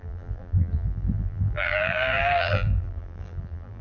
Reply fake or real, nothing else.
fake